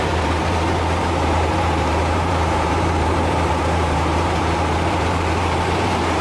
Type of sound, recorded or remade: remade